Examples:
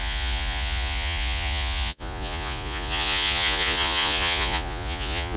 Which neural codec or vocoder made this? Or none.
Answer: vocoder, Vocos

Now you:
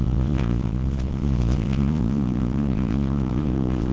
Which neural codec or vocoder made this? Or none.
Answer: vocoder, Vocos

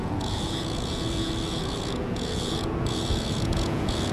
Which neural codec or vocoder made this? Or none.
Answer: vocoder, Vocos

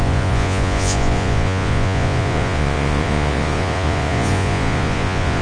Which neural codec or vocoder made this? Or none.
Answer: vocoder, Vocos